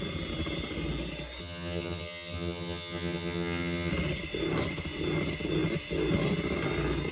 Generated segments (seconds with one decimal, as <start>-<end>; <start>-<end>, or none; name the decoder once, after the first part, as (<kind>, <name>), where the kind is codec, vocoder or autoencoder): 1.4-3.9 (vocoder, HiFi-GAN)